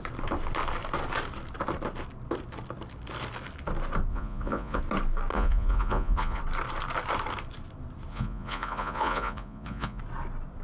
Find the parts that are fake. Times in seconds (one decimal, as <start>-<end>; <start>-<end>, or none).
4.1-4.8; 5.3-6.4; 8.1-10.0